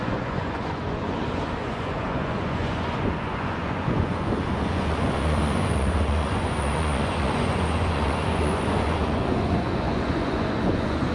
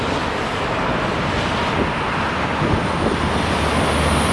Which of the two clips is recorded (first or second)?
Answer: second